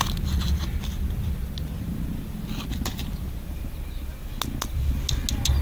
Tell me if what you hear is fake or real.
real